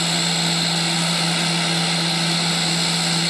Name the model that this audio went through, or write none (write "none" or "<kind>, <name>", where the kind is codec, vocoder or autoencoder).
none